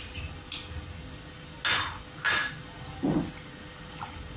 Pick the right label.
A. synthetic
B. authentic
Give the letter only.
B